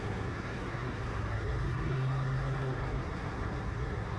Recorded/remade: remade